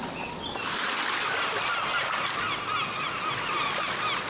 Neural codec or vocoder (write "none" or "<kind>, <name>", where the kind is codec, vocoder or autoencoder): none